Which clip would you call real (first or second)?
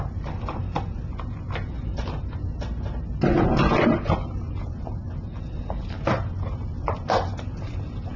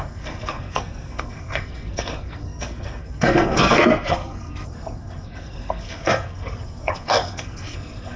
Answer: first